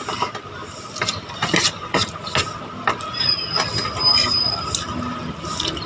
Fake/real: real